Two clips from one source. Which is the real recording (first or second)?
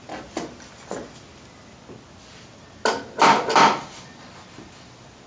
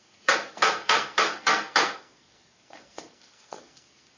first